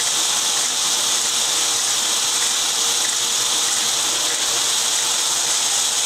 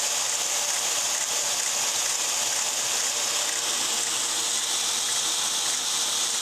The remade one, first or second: first